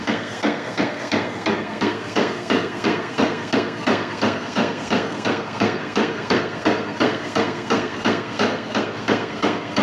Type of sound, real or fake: fake